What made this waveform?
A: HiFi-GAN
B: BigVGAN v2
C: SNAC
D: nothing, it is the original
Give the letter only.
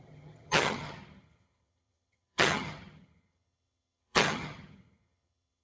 A